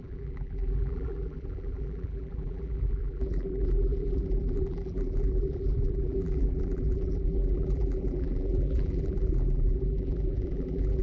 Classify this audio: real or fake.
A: fake